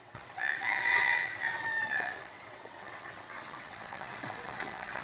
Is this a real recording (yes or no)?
no